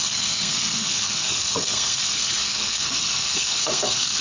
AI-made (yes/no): yes